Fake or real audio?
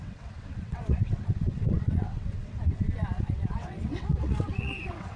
fake